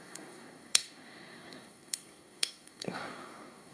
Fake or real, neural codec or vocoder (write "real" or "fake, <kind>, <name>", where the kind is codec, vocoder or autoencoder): fake, codec, SNAC